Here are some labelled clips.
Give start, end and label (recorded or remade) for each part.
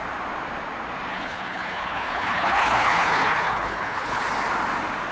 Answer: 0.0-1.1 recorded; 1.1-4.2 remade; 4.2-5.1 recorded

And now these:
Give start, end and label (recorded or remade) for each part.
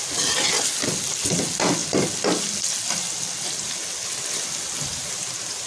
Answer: 0.0-4.9 recorded; 4.9-5.7 remade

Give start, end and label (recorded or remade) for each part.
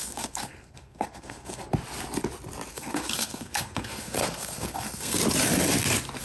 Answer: 0.0-1.6 remade; 1.6-2.7 recorded; 2.7-5.2 remade; 5.2-6.2 recorded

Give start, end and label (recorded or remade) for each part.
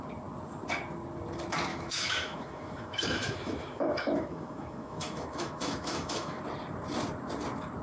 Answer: 0.0-1.7 recorded; 1.7-6.4 remade; 6.4-7.8 recorded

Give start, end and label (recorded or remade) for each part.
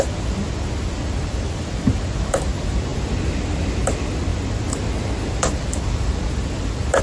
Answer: 0.0-7.0 recorded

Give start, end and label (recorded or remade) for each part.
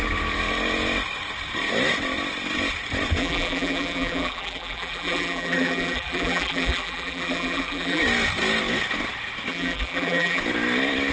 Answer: 0.0-3.2 recorded; 3.2-8.0 remade; 8.0-9.5 recorded; 9.5-10.4 remade; 10.4-11.1 recorded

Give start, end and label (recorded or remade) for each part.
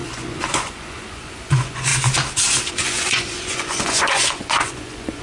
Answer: 0.0-1.9 remade; 1.9-2.7 recorded; 2.7-5.2 remade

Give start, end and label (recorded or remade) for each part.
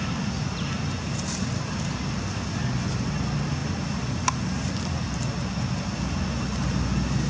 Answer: 0.0-7.3 recorded